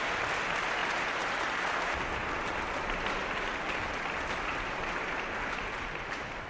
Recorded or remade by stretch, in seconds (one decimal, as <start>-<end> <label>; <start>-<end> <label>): 0.0-0.8 recorded; 0.8-1.3 remade; 1.3-6.5 recorded